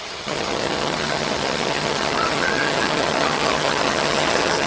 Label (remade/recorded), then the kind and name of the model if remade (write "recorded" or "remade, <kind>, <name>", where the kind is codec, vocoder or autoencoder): remade, vocoder, HiFi-GAN